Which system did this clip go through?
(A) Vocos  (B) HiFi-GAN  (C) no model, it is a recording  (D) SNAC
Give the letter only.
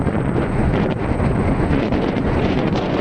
A